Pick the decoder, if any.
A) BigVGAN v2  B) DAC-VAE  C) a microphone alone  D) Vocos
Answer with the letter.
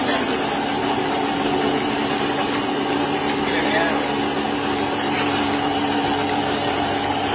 C